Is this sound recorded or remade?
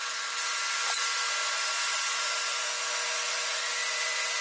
recorded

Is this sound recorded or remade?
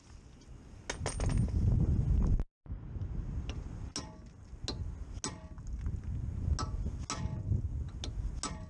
recorded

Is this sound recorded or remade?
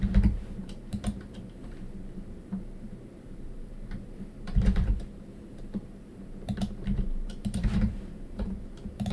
remade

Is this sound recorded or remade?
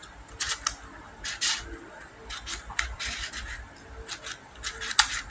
recorded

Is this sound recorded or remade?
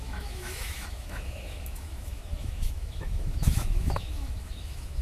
remade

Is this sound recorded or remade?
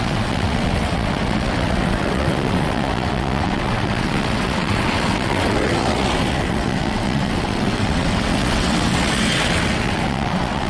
remade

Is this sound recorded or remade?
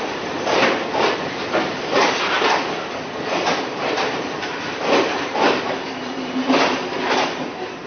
remade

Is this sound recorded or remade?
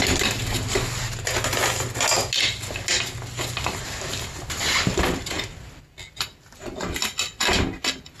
recorded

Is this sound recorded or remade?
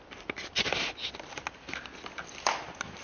recorded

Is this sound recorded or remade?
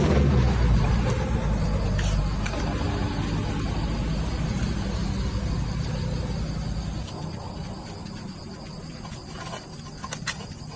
recorded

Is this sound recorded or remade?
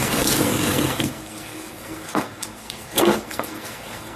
remade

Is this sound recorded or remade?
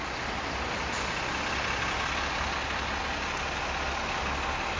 recorded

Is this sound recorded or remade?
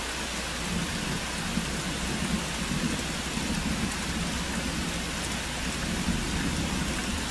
recorded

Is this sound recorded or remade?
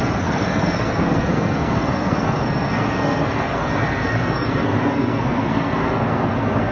remade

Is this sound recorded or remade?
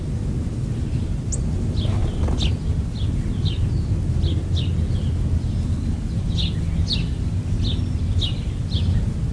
recorded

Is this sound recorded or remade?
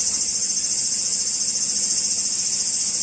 recorded